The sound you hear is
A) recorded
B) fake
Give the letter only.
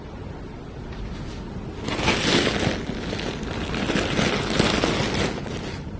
A